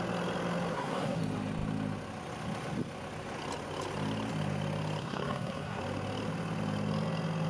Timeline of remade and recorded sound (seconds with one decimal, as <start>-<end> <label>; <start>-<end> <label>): 0.0-0.7 recorded; 0.7-1.2 remade; 1.2-5.0 recorded; 5.0-5.8 remade; 5.8-7.5 recorded

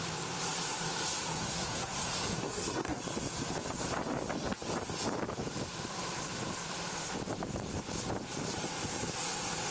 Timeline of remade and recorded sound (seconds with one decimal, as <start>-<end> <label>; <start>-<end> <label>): 0.0-1.4 recorded; 1.4-3.0 remade; 3.0-9.7 recorded

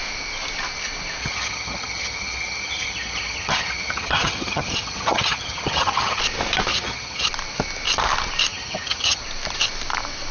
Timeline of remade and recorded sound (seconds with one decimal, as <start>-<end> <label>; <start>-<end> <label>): 0.0-1.2 recorded; 1.2-6.2 remade; 6.2-6.7 recorded; 6.7-7.3 remade; 7.3-8.5 recorded; 8.5-9.2 remade; 9.2-10.3 recorded

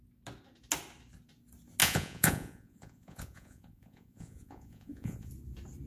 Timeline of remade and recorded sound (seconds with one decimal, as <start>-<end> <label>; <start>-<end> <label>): 0.0-1.8 recorded; 1.8-5.3 remade; 5.3-5.9 recorded

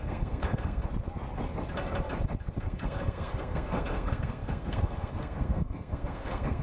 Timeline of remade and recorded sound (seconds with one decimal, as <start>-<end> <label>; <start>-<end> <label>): 0.0-0.8 remade; 0.8-2.6 recorded; 2.6-6.6 remade

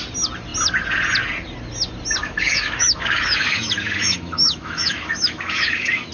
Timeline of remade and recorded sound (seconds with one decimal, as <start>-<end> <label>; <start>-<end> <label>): 0.0-2.2 recorded; 2.2-6.1 remade

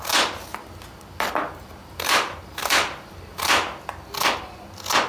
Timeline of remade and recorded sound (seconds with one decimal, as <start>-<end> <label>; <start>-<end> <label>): 0.0-1.8 recorded; 1.8-3.3 remade; 3.3-5.1 recorded